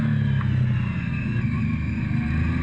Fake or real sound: real